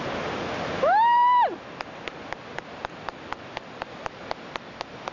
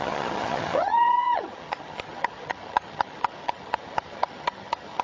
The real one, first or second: first